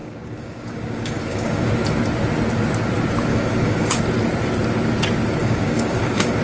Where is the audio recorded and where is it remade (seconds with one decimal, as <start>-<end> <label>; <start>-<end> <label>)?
0.0-1.7 remade; 1.7-3.3 recorded; 3.3-4.0 remade; 4.0-5.4 recorded; 5.4-6.4 remade